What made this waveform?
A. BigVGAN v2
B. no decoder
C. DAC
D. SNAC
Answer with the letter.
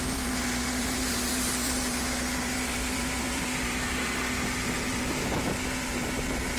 A